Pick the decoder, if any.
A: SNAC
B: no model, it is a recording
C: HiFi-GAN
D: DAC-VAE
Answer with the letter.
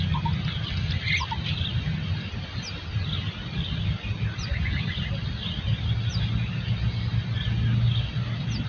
B